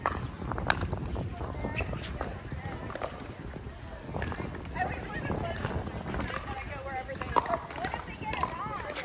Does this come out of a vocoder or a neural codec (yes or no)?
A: no